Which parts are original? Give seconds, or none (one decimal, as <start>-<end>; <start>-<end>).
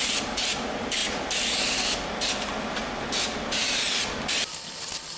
0.0-5.2